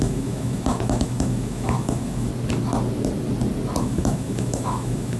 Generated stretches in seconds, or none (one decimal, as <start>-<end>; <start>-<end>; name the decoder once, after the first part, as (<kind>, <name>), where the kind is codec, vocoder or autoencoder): 0.0-2.3 (autoencoder, DAC-VAE); 3.8-5.2